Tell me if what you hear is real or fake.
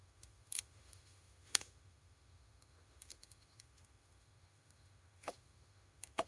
fake